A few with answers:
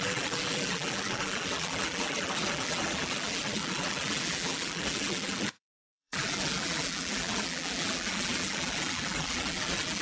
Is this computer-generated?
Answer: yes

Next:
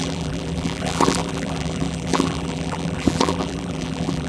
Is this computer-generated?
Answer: yes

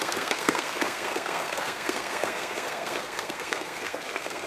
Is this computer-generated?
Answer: yes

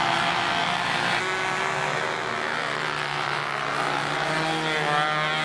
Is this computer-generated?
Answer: no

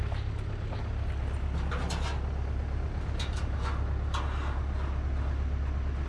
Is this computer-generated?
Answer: no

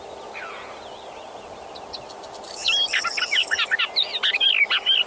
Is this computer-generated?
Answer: no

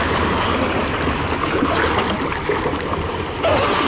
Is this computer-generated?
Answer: no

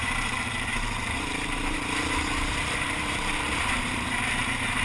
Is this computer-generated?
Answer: yes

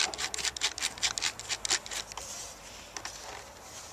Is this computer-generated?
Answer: no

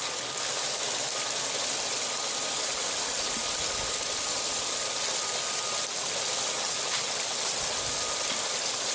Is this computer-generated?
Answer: no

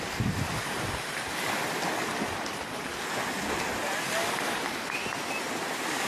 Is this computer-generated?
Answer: no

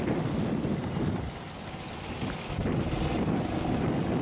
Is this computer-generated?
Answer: no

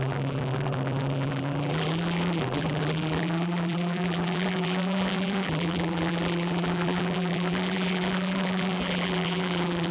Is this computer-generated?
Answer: yes